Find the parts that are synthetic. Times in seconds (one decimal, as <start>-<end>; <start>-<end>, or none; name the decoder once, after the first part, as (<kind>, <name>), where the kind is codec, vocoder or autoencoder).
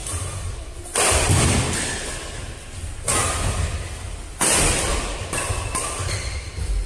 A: none